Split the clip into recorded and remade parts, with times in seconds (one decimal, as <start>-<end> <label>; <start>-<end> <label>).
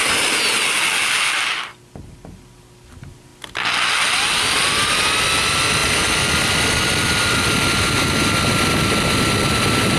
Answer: 0.0-10.0 recorded